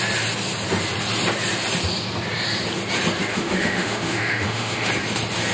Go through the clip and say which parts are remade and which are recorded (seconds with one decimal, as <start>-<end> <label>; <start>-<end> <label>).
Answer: 0.0-3.3 recorded; 3.3-4.9 remade; 4.9-5.5 recorded